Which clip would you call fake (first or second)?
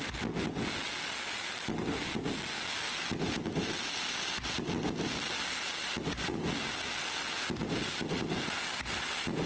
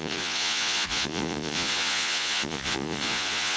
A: second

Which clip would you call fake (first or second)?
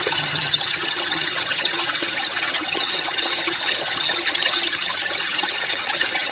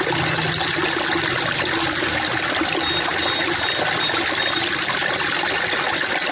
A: first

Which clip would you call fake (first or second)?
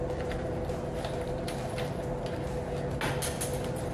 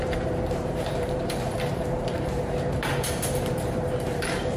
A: second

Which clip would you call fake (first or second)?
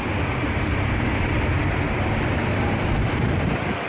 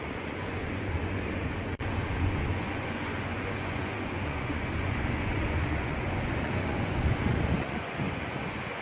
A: second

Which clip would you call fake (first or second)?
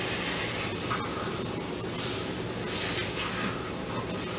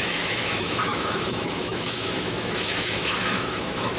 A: second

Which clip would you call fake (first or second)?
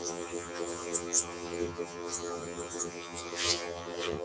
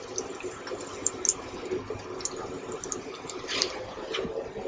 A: first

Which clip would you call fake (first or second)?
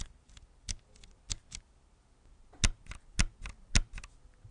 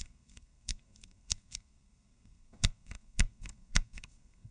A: second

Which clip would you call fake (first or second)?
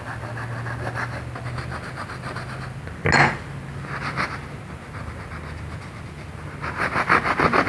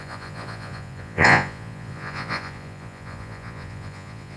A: second